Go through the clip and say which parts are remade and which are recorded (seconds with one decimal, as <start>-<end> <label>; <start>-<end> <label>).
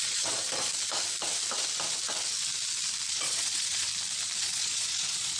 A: 0.0-0.4 remade; 0.4-3.1 recorded; 3.1-3.9 remade; 3.9-4.4 recorded; 4.4-5.4 remade